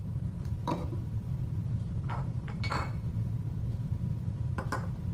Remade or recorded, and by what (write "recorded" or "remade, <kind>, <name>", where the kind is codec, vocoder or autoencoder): remade, vocoder, BigVGAN v2